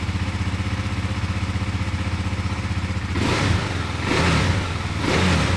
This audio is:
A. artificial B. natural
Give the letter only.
B